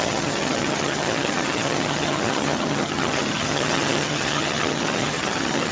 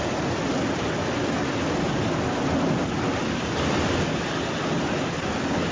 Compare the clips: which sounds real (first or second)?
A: second